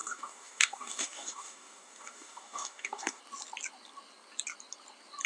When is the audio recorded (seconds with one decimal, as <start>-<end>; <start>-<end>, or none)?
3.2-5.3